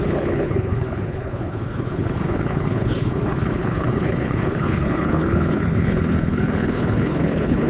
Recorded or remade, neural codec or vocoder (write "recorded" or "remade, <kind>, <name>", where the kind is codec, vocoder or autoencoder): remade, codec, HILCodec